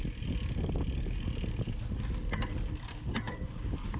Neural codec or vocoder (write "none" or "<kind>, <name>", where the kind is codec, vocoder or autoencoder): none